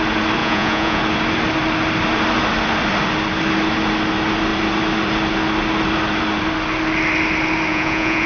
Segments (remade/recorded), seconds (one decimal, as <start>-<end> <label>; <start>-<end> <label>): 0.0-0.4 recorded; 0.4-1.0 remade; 1.0-7.7 recorded; 7.7-8.3 remade

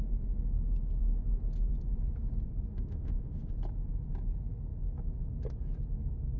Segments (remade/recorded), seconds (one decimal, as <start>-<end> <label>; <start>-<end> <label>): 0.0-2.7 recorded; 2.7-3.5 remade; 3.5-6.4 recorded

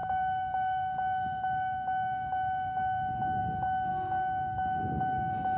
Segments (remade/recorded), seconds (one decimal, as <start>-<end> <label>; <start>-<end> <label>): 0.0-5.6 remade